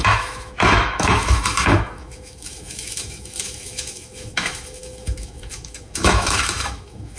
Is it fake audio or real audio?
fake